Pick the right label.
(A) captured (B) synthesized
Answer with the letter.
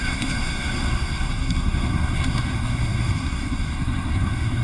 B